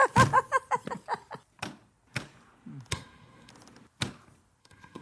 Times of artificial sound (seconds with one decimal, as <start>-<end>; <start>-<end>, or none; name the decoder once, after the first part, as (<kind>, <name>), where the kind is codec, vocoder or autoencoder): 2.9-3.5 (codec, SNAC); 4.6-5.0